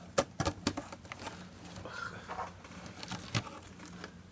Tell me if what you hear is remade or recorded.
recorded